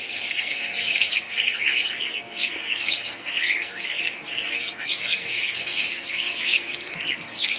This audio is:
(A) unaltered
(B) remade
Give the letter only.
B